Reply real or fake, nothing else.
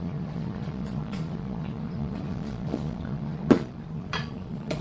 fake